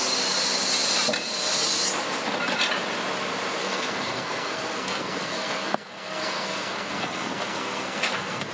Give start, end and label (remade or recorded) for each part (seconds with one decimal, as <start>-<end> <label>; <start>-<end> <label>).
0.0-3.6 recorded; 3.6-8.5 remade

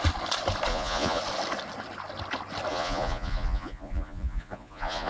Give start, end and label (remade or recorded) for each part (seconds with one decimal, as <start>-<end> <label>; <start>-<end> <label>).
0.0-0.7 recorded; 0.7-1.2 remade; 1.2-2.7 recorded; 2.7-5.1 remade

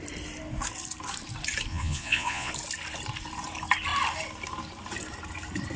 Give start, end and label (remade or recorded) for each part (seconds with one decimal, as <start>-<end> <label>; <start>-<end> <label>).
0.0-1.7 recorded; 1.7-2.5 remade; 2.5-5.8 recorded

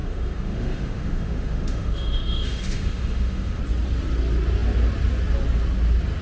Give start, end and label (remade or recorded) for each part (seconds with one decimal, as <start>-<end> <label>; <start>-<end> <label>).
0.0-3.6 remade; 3.6-6.2 recorded

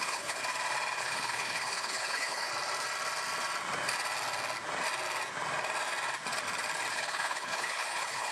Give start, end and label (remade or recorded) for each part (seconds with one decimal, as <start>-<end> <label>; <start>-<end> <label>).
0.0-0.4 remade; 0.4-1.0 recorded; 1.0-2.5 remade; 2.5-6.9 recorded; 6.9-8.3 remade

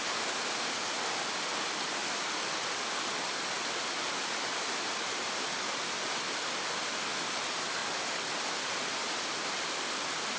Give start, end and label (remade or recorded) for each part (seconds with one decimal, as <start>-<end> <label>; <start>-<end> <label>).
0.0-10.4 recorded